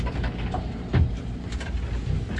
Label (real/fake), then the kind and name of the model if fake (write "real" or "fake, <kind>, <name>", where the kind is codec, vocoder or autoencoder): real